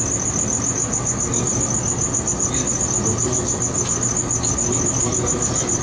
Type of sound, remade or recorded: recorded